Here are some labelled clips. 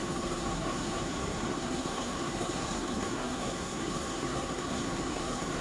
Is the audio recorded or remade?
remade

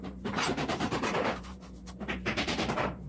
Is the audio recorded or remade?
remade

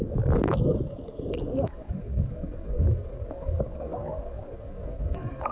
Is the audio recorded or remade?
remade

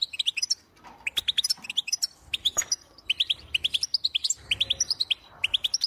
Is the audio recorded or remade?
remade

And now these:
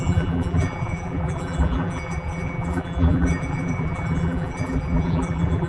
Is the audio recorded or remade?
remade